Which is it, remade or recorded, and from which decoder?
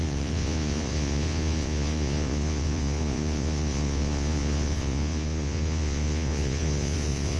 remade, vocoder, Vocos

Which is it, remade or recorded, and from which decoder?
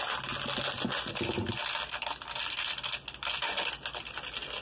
recorded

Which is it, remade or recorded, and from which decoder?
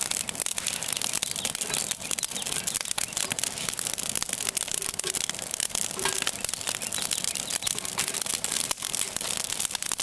recorded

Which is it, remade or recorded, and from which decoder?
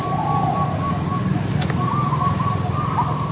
recorded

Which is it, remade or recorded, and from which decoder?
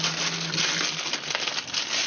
recorded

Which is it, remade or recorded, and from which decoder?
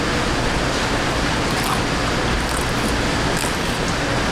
recorded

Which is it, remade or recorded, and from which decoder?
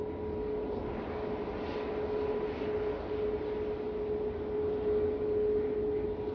recorded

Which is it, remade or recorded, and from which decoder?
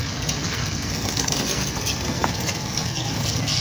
remade, codec, SNAC